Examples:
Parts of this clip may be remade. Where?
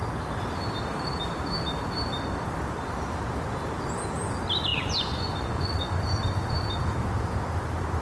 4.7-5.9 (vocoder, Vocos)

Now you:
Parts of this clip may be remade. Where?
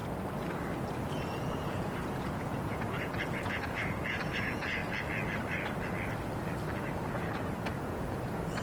1.1-4.8 (vocoder, Vocos); 6.8-8.6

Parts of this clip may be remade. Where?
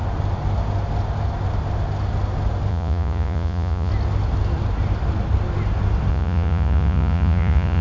2.7-3.9 (vocoder, Vocos); 6.1-7.8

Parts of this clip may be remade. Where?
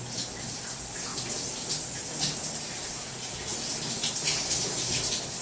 none